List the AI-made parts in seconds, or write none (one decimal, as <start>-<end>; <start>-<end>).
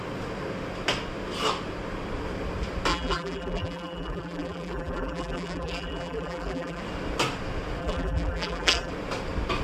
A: 2.9-6.8; 7.8-8.9